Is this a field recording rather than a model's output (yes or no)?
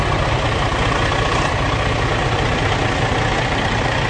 yes